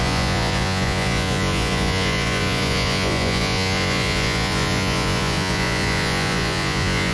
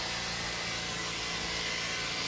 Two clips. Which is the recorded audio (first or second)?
second